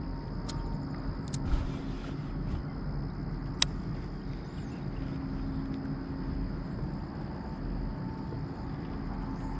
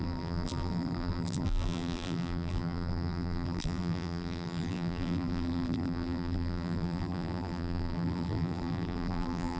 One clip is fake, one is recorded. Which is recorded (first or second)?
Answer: first